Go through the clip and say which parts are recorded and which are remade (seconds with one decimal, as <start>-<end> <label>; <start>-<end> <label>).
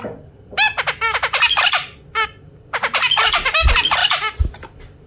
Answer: 0.0-5.1 recorded